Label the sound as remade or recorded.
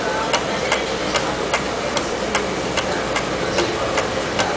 recorded